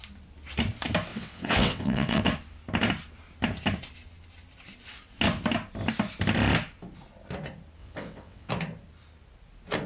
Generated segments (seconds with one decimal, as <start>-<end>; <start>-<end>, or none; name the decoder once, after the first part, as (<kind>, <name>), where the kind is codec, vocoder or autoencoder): 1.1-2.2 (vocoder, WaveNeXt); 7.8-8.5